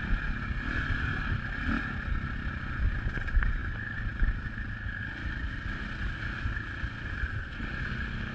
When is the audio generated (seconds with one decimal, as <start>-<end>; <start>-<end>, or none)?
none